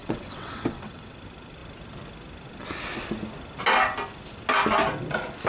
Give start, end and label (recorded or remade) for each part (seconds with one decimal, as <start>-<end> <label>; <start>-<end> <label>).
0.0-1.2 remade; 1.2-5.5 recorded